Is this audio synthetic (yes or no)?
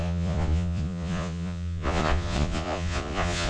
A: yes